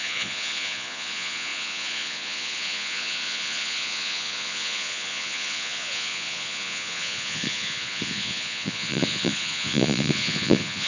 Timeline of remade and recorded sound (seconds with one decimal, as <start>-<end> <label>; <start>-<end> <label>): 0.0-10.9 remade